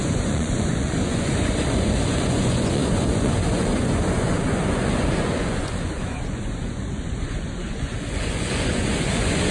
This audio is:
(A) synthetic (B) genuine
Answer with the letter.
A